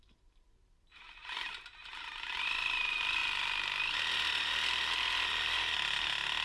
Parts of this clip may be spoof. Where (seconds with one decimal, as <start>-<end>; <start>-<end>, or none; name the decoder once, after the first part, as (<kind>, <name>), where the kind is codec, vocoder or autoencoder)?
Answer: none